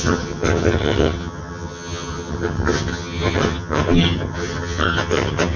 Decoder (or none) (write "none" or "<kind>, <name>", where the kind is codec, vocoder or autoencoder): vocoder, HiFi-GAN